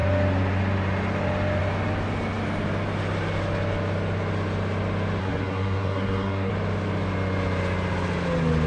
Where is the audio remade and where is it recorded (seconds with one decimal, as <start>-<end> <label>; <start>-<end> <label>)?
0.0-5.2 recorded; 5.2-6.5 remade; 6.5-8.7 recorded